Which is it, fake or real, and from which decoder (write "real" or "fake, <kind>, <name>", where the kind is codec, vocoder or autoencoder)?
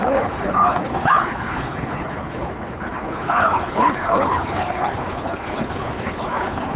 fake, codec, HILCodec